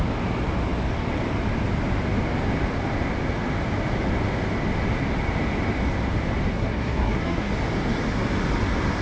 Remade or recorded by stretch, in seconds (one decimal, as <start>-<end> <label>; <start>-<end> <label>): 0.0-6.5 recorded; 6.5-7.5 remade; 7.5-9.0 recorded